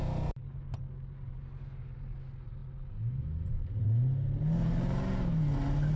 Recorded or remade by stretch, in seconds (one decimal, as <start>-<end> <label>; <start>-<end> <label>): 0.0-6.0 recorded